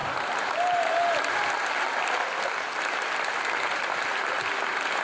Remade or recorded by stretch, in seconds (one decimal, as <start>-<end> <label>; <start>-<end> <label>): 0.0-5.0 recorded